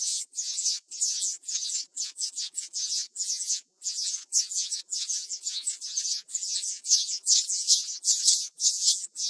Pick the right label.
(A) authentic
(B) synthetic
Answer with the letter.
B